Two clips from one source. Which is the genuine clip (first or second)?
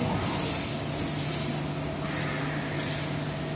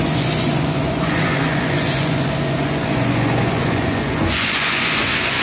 first